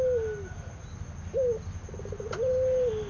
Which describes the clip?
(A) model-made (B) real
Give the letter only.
B